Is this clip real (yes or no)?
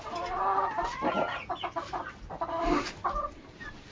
yes